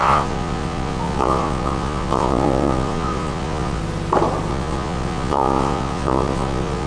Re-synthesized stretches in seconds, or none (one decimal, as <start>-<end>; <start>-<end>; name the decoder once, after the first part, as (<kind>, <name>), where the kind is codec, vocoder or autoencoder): 0.0-3.8 (vocoder, Vocos); 4.5-6.9